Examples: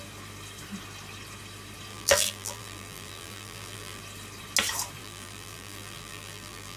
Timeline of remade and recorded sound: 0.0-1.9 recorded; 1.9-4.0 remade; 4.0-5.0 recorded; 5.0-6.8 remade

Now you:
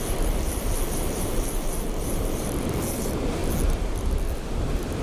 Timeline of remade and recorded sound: 0.0-3.4 remade; 3.4-5.0 recorded

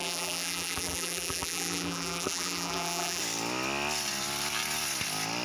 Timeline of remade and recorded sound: 0.0-3.2 remade; 3.2-5.4 recorded